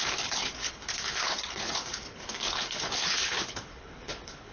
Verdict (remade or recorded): remade